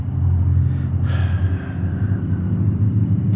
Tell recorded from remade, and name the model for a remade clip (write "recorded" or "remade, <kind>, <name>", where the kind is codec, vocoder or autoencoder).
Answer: recorded